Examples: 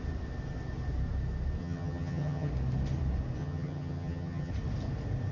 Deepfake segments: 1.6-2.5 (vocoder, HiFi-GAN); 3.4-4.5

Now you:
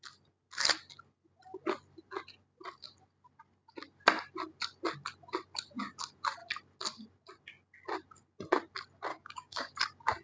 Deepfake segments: 9.1-9.7 (codec, DAC)

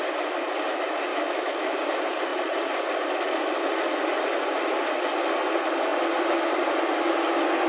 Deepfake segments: 1.1-1.7 (autoencoder, DAC-VAE)

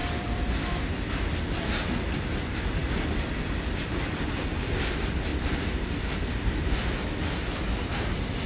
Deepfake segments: 0.0-1.1 (vocoder, BigVGAN v2); 2.8-4.4; 5.3-6.2

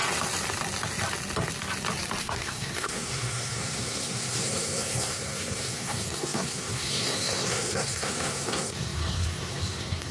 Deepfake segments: 2.2-10.1 (codec, SNAC)

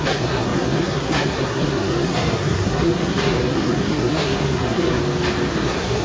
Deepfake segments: 0.0-5.0 (codec, SNAC); 5.5-6.0

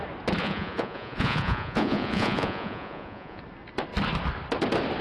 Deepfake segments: 0.4-3.4 (vocoder, Vocos)

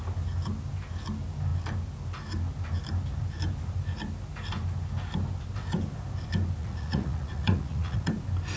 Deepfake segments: 6.6-8.1 (vocoder, Vocos)